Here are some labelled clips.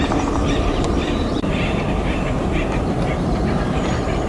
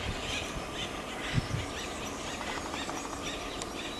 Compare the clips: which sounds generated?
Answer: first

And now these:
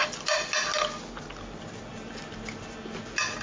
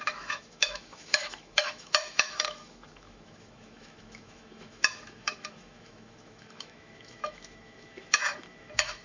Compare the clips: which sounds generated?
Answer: second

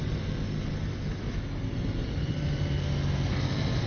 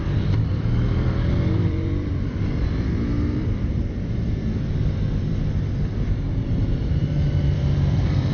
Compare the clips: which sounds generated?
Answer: second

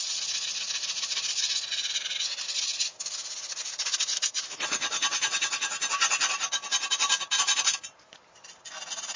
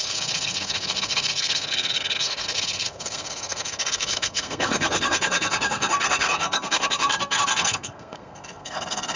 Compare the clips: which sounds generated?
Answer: second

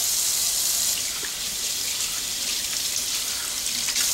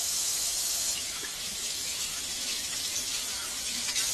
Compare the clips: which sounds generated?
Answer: second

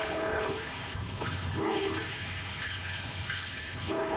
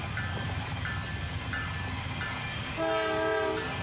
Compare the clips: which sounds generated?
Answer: first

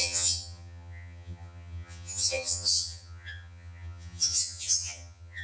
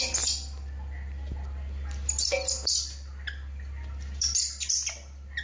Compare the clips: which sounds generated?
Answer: first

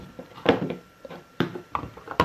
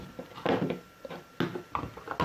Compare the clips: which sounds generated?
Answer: first